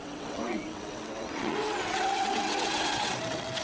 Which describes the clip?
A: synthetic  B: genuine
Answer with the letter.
A